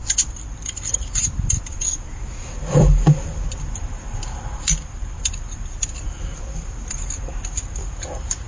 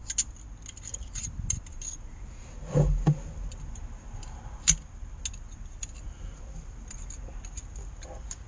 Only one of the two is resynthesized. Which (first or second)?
first